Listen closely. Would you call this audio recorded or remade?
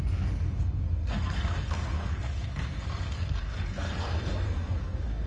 remade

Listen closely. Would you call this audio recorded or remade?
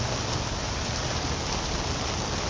recorded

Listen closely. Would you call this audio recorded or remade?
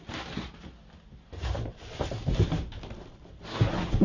recorded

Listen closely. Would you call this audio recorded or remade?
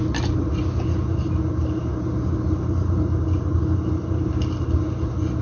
recorded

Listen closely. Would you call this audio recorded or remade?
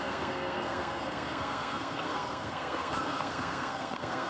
remade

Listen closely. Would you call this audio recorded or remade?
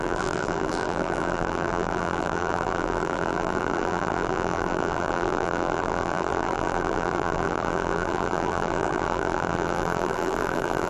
remade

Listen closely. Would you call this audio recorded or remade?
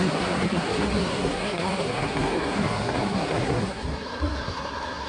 remade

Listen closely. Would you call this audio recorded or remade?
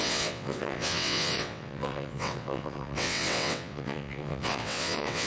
remade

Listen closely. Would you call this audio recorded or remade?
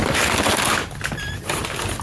recorded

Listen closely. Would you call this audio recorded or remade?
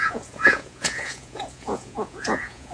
remade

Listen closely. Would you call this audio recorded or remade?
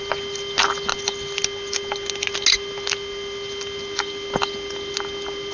recorded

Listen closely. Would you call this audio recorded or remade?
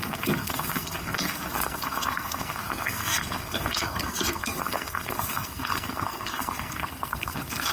remade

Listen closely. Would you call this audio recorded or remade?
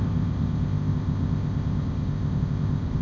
remade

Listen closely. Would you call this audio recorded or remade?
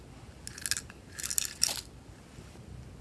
recorded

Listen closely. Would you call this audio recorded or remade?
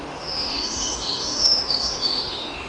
remade